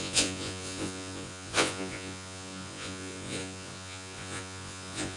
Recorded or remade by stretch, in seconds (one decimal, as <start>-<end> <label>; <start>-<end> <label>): 0.0-5.2 remade